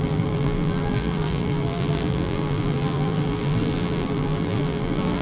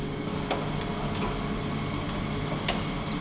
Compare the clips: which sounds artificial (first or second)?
first